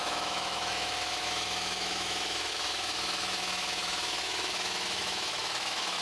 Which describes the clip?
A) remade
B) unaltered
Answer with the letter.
A